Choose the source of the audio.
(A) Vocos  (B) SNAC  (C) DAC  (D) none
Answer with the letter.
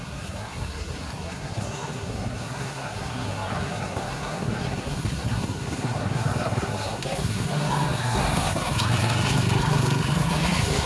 B